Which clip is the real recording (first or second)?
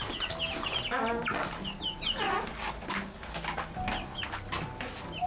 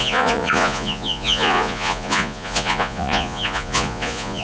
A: first